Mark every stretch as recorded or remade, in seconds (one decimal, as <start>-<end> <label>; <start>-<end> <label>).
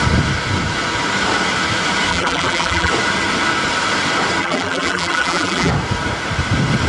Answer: 0.0-2.1 recorded; 2.1-2.9 remade; 2.9-4.4 recorded; 4.4-5.7 remade; 5.7-6.9 recorded